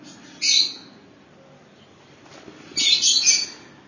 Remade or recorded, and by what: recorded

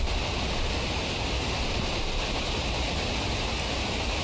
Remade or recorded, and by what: recorded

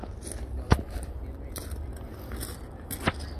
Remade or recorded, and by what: recorded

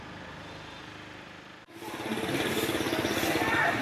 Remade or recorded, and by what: remade, vocoder, BigVGAN v2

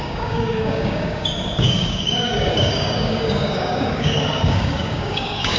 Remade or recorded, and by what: remade, codec, DAC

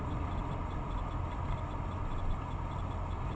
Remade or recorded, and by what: recorded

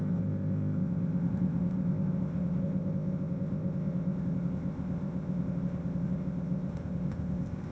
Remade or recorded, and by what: remade, codec, ZipCodec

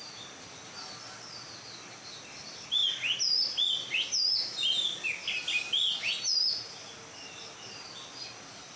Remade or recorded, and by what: recorded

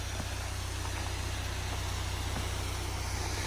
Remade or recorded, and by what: recorded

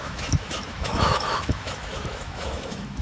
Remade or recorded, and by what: remade, autoencoder, DAC-VAE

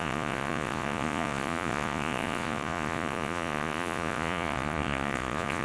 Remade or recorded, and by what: remade, vocoder, Vocos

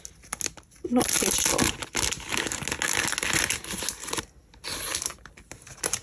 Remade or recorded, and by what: recorded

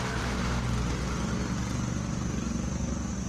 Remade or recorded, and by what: recorded